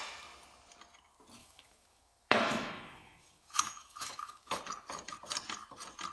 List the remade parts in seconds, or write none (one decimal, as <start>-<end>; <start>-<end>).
1.4-4.6